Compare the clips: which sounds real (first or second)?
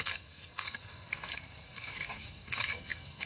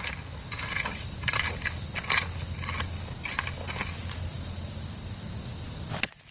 second